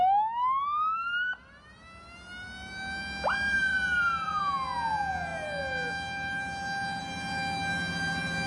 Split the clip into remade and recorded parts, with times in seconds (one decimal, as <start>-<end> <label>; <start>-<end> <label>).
0.0-3.7 recorded; 3.7-4.4 remade; 4.4-8.5 recorded